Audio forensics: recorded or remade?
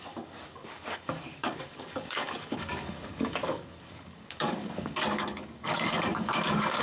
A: remade